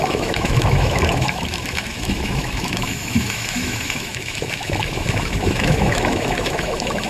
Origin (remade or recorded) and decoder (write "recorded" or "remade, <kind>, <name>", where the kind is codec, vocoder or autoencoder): remade, autoencoder, DAC-VAE